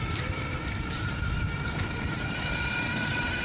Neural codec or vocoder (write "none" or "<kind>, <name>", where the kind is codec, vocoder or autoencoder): vocoder, BigVGAN v2